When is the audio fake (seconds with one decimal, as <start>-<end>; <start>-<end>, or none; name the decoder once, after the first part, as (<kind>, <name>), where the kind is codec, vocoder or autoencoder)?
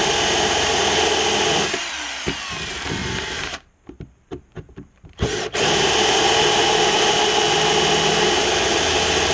0.0-0.8 (vocoder, BigVGAN v2); 3.0-7.2